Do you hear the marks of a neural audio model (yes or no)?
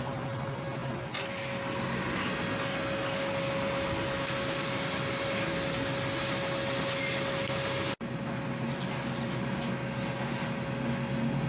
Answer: no